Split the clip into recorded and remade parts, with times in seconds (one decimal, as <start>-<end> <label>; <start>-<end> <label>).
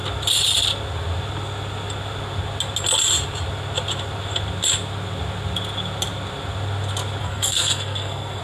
0.0-7.2 recorded; 7.2-8.4 remade